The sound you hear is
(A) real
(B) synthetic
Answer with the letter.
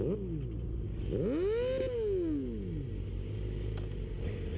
A